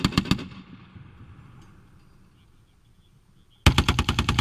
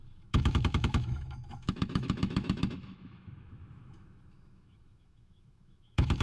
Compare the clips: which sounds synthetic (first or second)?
second